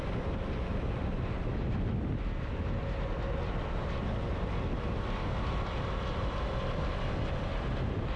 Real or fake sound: real